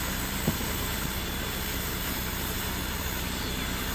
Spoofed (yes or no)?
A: yes